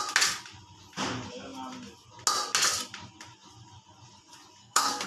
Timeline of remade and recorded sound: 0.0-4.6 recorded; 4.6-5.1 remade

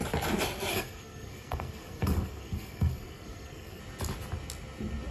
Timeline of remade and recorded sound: 0.0-0.7 recorded; 0.7-3.8 remade; 3.8-5.1 recorded